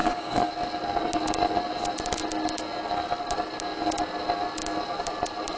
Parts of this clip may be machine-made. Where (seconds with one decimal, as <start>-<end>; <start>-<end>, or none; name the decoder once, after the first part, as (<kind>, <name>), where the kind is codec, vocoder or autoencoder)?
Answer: 0.0-0.5 (codec, DAC)